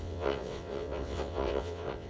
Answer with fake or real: fake